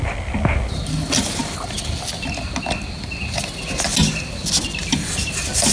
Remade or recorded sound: recorded